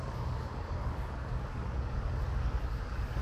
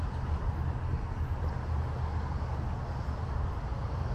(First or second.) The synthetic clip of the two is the first